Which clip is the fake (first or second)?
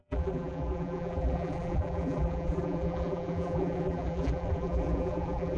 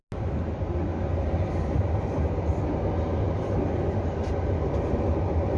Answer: first